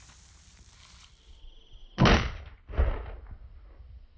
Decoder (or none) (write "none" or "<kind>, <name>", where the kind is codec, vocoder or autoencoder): none